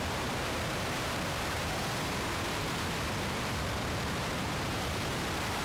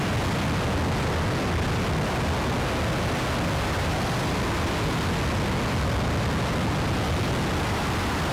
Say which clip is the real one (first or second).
second